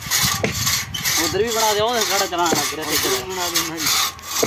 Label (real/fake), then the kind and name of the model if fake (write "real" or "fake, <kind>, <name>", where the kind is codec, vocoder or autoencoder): real